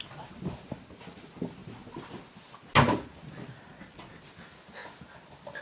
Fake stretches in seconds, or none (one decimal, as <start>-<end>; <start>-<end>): none